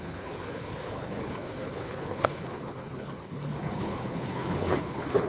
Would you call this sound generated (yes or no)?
yes